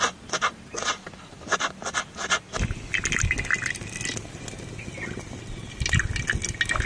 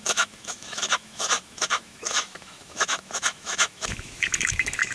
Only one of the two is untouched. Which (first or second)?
first